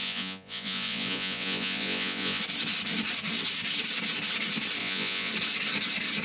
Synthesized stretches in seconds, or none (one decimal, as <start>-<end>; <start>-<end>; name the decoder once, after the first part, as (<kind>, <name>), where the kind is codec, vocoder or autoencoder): 0.0-2.4 (vocoder, Vocos); 4.8-5.3